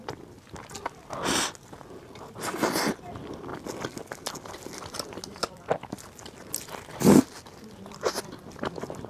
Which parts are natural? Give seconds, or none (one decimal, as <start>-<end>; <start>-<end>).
0.0-9.1